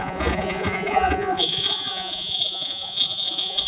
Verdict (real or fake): fake